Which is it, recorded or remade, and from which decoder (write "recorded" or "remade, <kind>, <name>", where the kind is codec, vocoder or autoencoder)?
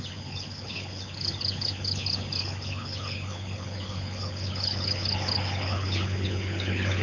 remade, codec, HILCodec